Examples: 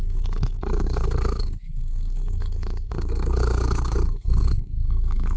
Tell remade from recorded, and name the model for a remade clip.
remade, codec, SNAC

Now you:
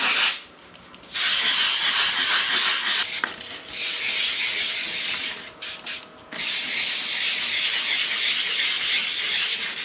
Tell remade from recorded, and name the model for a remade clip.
recorded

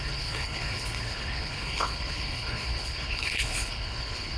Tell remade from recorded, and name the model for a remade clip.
remade, codec, HILCodec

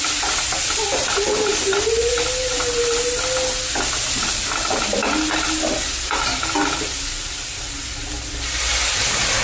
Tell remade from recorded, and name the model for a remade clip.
recorded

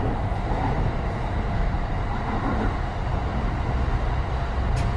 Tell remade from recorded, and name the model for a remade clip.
recorded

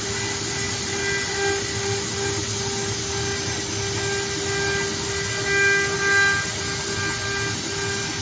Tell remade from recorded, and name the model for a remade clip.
recorded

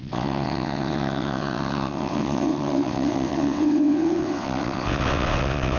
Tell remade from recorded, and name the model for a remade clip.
remade, vocoder, WaveNeXt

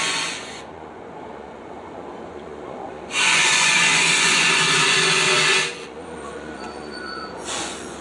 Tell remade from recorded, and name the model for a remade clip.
remade, vocoder, Vocos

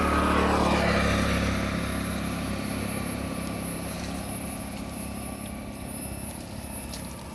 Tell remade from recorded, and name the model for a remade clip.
recorded